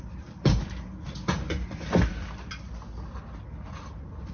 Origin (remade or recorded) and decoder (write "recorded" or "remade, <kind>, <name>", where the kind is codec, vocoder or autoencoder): recorded